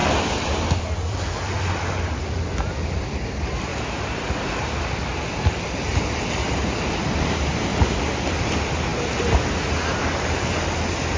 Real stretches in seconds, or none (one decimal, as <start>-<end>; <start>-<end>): 3.7-5.4; 8.9-11.2